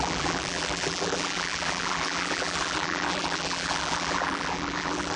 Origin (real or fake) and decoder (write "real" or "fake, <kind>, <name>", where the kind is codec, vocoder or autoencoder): fake, vocoder, BigVGAN v2